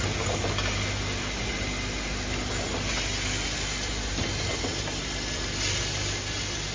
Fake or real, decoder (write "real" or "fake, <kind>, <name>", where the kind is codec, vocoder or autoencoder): real